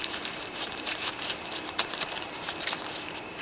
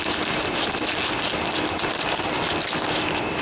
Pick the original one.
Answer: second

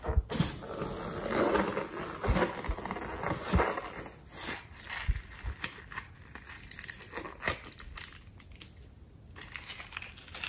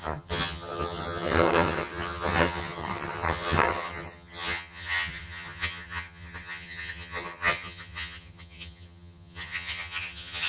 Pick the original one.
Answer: first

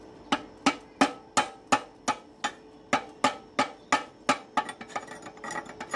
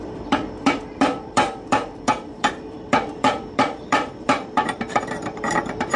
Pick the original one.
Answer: first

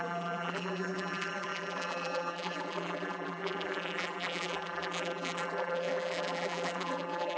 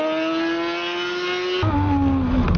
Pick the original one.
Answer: second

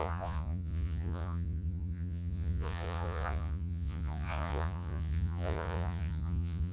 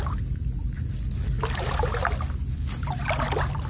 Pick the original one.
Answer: second